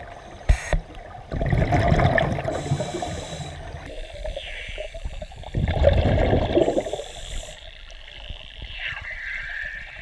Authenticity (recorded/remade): remade